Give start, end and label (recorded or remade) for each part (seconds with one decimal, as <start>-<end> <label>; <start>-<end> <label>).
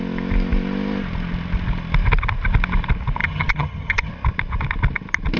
0.0-3.2 recorded; 3.2-4.1 remade; 4.1-5.4 recorded